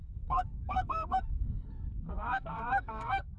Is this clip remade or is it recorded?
remade